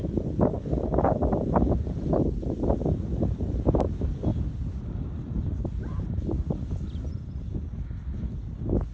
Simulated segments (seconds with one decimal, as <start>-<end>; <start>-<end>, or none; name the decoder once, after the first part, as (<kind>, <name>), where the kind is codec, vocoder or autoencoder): none